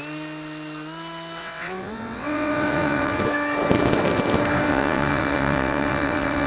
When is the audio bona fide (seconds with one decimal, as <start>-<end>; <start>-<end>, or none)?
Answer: 0.0-1.4; 3.2-4.7